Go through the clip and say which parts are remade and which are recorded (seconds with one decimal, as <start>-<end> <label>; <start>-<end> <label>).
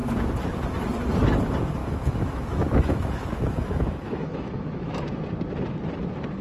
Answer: 0.0-1.8 recorded; 1.8-5.2 remade; 5.2-6.4 recorded